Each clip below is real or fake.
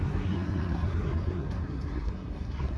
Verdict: fake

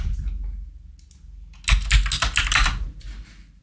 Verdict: real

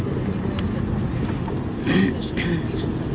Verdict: real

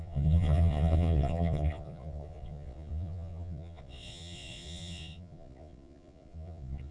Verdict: fake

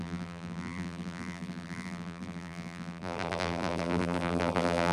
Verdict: fake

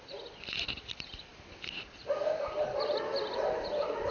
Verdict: real